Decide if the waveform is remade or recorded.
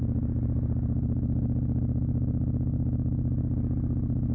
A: recorded